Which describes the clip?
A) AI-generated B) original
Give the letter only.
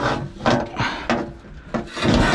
B